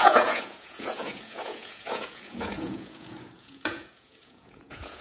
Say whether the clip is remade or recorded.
remade